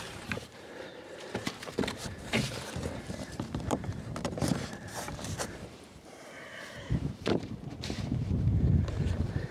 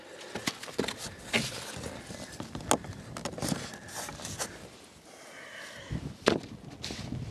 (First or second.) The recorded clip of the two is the second